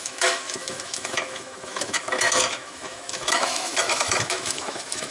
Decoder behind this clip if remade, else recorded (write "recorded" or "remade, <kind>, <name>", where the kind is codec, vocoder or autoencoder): remade, autoencoder, DAC-VAE